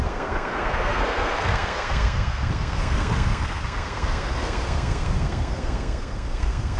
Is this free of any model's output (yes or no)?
no